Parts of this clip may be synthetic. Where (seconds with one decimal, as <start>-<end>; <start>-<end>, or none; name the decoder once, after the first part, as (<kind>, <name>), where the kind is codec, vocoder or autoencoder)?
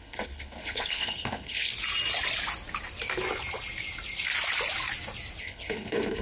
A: 0.0-1.7 (codec, HILCodec); 5.4-6.2